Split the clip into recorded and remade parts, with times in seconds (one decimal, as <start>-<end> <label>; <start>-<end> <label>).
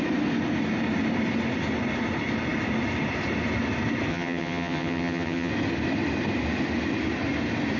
0.0-4.1 recorded; 4.1-5.5 remade; 5.5-7.8 recorded